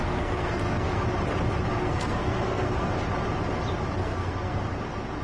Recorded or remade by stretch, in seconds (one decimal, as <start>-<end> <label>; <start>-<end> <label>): 0.0-1.0 remade; 1.0-1.7 recorded; 1.7-2.9 remade; 2.9-4.0 recorded; 4.0-4.6 remade; 4.6-5.2 recorded